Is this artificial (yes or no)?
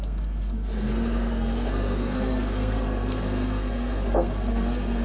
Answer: yes